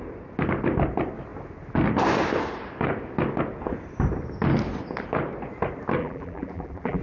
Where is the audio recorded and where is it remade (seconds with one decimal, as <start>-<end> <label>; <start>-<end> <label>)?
0.0-6.0 recorded; 6.0-7.0 remade